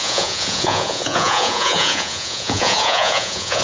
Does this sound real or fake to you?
fake